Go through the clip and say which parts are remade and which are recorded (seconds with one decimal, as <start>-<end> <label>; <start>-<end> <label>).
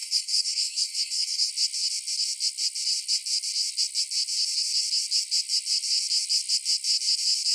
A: 0.0-1.5 remade; 1.5-7.5 recorded